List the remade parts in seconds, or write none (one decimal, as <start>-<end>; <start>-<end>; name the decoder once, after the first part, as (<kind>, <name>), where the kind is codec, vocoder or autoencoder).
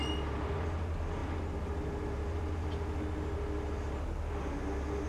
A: none